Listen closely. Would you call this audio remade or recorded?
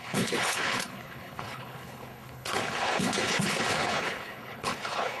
remade